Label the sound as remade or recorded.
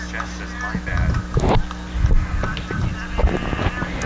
recorded